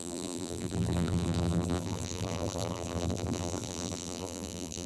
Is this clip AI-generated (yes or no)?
yes